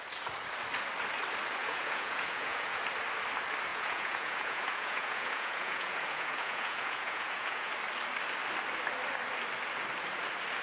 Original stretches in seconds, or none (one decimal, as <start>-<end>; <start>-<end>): 0.0-1.6; 2.8-3.7; 7.7-10.6